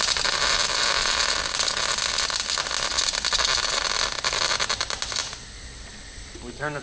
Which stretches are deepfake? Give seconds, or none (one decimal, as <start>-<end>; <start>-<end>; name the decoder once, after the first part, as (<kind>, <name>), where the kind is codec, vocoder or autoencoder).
none